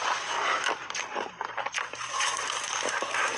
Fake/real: fake